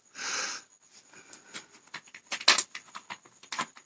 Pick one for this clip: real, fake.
real